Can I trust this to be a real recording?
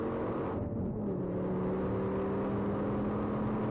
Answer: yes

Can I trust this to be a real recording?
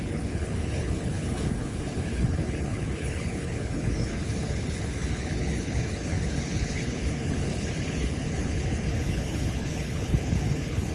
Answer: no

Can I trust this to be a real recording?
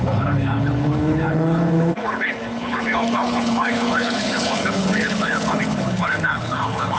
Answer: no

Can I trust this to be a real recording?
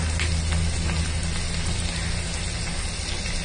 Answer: yes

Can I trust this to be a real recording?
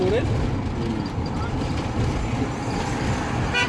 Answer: yes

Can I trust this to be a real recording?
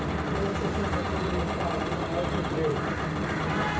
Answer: yes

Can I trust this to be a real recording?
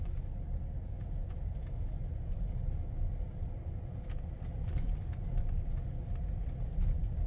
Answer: yes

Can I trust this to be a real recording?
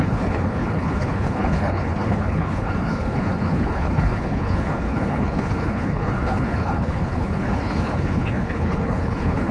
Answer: no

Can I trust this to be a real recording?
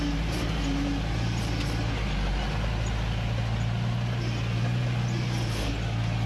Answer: yes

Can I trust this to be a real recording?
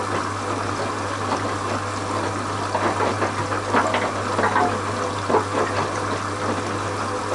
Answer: yes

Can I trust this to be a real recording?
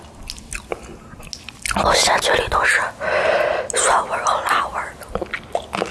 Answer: yes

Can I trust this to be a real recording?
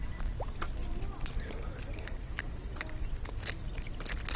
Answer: yes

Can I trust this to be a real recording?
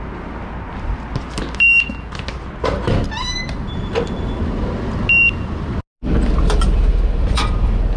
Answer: yes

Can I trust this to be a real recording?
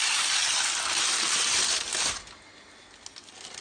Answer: yes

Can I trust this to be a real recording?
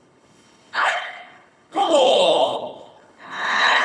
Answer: no